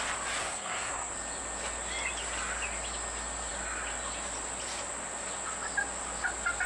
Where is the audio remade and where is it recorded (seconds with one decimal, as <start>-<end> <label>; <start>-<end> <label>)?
0.0-0.4 recorded; 0.4-1.1 remade; 1.1-6.7 recorded